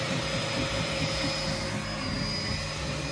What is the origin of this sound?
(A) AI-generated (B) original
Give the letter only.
B